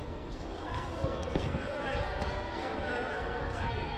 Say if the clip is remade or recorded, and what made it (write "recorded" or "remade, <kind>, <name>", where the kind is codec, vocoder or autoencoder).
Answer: remade, codec, SNAC